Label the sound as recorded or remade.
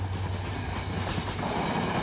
recorded